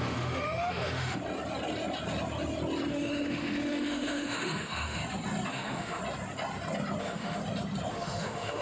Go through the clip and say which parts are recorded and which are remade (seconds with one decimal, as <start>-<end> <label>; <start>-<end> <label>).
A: 0.0-1.2 remade; 1.2-2.9 recorded; 2.9-5.0 remade; 5.0-5.5 recorded; 5.5-6.0 remade; 6.0-7.0 recorded; 7.0-7.4 remade; 7.4-7.9 recorded; 7.9-8.6 remade